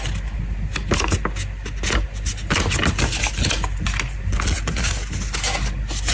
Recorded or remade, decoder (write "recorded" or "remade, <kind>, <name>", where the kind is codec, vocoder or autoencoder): recorded